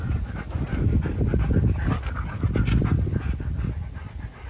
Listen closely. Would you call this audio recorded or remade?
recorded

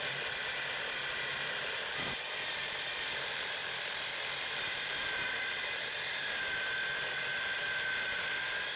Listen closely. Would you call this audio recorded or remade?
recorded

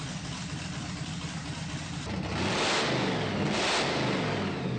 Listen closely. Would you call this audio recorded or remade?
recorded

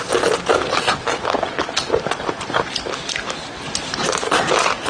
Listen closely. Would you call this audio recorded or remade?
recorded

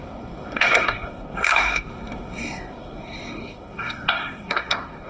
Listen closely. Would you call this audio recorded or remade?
remade